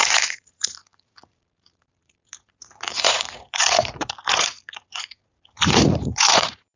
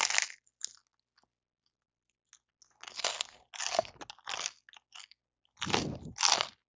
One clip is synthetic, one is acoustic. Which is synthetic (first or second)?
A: first